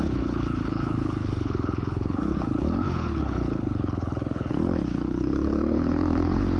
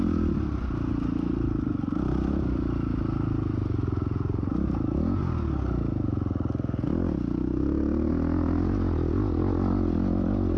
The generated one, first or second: first